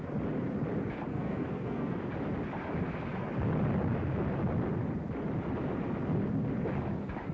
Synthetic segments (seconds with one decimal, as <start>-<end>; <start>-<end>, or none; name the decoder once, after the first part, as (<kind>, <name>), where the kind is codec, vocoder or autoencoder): 1.1-2.0 (codec, SNAC)